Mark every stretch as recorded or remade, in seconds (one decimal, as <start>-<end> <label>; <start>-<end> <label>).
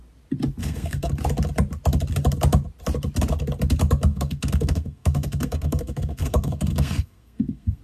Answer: 0.0-0.6 recorded; 0.6-1.1 remade; 1.1-4.1 recorded; 4.1-7.8 remade